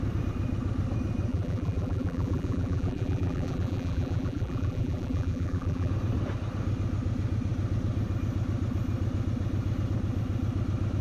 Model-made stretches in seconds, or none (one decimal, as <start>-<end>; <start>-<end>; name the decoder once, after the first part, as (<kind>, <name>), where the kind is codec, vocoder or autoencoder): 1.3-5.9 (vocoder, BigVGAN v2)